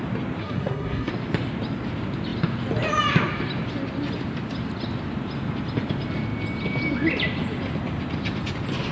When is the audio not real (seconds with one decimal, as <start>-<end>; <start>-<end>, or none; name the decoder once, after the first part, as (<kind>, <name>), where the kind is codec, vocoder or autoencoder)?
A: 0.4-1.1 (codec, SNAC)